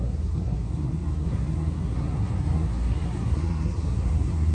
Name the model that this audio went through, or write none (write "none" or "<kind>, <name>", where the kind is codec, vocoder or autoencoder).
codec, SNAC